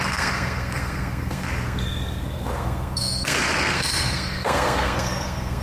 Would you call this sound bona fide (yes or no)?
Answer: no